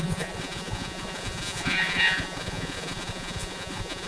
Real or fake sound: fake